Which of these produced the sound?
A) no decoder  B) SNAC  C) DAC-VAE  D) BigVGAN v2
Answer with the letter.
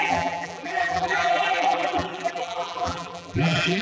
D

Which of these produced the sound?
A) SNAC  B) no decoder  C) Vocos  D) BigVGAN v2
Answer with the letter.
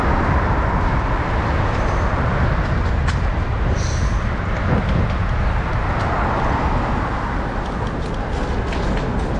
B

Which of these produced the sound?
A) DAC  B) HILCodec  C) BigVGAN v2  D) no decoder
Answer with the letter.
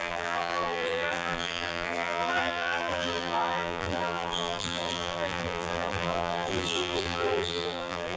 C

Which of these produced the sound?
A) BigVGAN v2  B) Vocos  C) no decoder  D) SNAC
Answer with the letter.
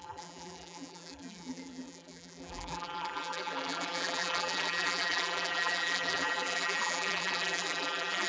A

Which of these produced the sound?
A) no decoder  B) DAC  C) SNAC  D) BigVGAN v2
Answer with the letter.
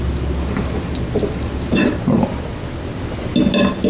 A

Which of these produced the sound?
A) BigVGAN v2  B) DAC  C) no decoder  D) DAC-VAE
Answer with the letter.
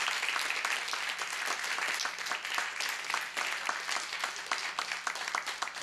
C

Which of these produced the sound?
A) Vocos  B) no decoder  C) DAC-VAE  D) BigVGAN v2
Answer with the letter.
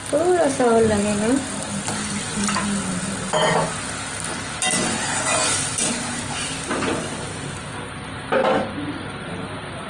B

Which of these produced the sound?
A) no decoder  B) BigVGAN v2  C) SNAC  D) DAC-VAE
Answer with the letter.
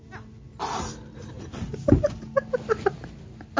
A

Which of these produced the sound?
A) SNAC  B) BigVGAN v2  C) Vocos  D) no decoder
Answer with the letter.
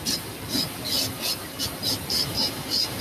D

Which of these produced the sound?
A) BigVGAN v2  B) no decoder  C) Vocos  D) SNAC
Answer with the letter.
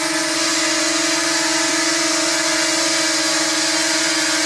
A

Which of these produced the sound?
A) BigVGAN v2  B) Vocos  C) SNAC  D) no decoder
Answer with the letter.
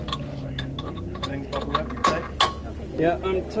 D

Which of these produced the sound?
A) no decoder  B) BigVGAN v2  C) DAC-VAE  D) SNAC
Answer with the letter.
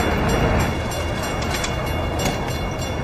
A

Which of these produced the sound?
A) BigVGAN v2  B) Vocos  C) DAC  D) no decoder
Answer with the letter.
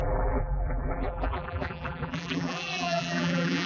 A